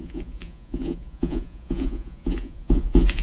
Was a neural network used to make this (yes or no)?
yes